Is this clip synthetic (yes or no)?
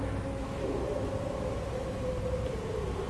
no